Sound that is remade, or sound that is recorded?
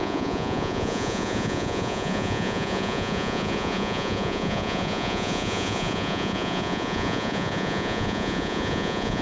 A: remade